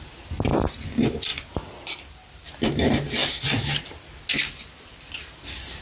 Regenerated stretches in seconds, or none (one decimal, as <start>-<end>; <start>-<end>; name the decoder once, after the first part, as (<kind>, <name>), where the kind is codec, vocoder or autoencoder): none